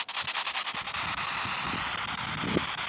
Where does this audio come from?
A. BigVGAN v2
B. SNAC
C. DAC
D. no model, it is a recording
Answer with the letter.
D